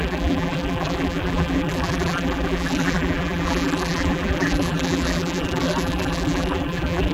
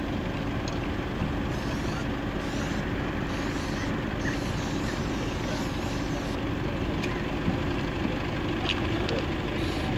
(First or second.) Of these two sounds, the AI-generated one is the first